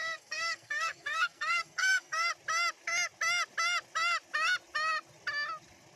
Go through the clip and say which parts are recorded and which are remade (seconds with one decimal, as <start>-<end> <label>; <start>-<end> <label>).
0.0-2.3 remade; 2.3-6.0 recorded